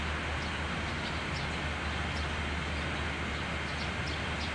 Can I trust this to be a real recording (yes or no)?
yes